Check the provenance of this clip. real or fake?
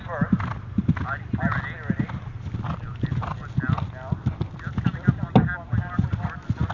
real